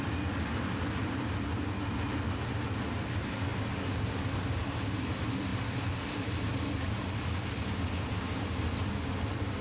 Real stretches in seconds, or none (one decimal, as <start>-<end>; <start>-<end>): 0.0-9.6